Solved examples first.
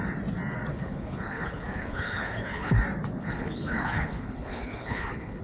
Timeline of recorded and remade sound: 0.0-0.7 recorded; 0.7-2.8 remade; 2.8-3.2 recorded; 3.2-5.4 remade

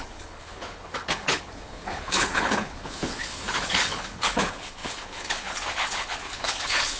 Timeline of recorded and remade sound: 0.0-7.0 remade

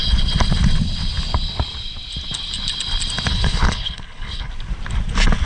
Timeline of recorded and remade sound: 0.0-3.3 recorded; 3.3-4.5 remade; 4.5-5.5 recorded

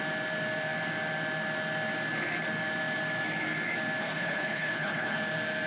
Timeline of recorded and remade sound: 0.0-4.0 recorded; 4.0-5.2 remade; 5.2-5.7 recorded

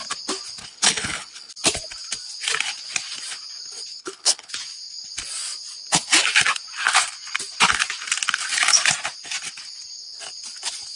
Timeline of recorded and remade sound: 0.0-0.6 recorded; 0.6-1.5 remade; 1.5-4.0 recorded; 4.0-4.5 remade; 4.5-11.0 recorded

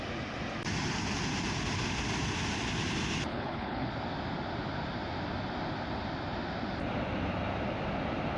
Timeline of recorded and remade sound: 0.0-3.3 recorded; 3.3-3.9 remade; 3.9-8.4 recorded

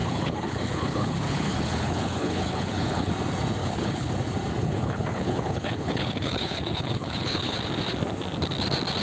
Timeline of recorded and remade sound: 0.0-3.1 remade; 3.1-3.6 recorded; 3.6-4.1 remade; 4.1-4.6 recorded; 4.6-7.6 remade; 7.6-9.0 recorded